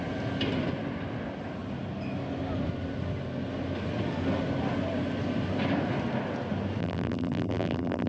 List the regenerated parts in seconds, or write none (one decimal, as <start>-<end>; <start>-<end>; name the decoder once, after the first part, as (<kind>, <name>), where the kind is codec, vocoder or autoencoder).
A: 6.8-8.1 (vocoder, BigVGAN v2)